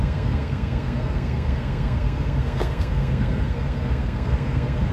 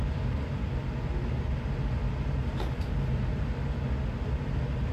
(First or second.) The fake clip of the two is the first